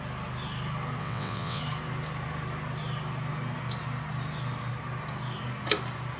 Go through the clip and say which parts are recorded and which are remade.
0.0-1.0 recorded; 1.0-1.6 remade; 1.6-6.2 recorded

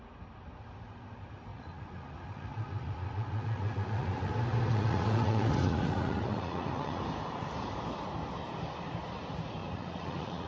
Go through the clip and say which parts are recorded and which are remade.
0.0-1.5 recorded; 1.5-4.3 remade; 4.3-4.7 recorded; 4.7-7.0 remade; 7.0-9.6 recorded; 9.6-10.5 remade

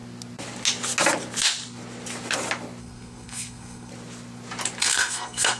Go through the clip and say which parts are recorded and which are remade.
0.0-2.8 recorded; 2.8-3.9 remade; 3.9-4.8 recorded; 4.8-5.6 remade

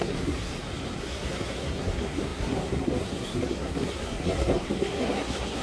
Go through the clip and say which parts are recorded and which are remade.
0.0-0.5 remade; 0.5-1.0 recorded; 1.0-5.6 remade